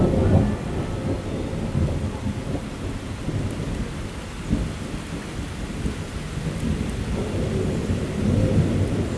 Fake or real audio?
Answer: real